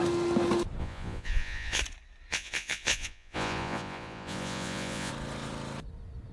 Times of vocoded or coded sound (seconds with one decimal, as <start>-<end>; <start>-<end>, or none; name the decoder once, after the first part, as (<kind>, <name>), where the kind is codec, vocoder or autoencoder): 0.8-1.8 (vocoder, Vocos); 2.3-5.1